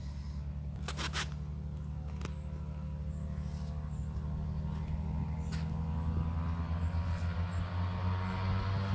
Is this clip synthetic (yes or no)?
no